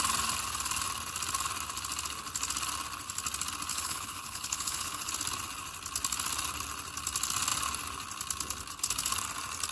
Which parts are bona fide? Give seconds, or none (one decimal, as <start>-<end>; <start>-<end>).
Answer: 0.0-3.7; 5.1-9.7